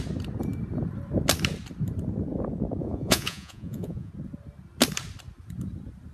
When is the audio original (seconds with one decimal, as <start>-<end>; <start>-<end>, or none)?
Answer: 0.0-2.8; 4.1-6.1